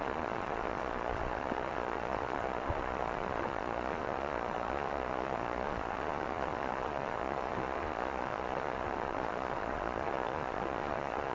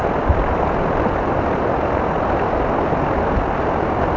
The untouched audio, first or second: second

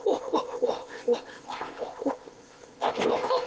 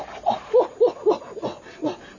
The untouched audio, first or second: second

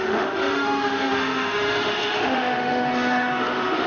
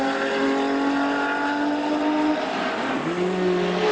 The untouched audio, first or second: second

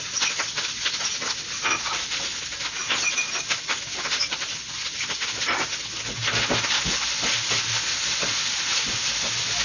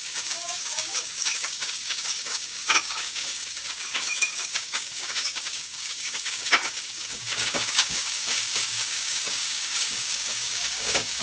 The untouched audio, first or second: first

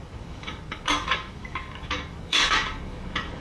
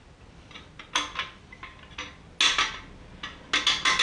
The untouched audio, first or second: second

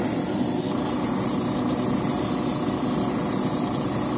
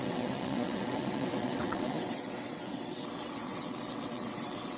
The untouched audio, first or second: first